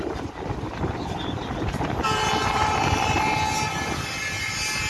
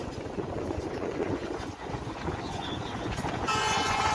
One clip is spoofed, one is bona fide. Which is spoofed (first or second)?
second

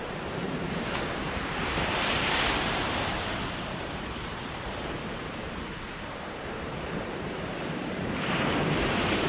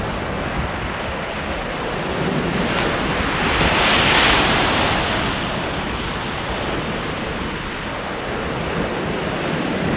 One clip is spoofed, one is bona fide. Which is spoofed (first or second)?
first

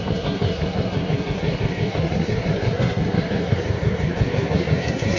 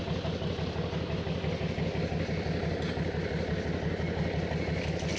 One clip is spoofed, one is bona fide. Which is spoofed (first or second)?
first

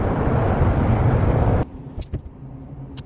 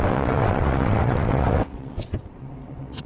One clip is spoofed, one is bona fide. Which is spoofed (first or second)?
second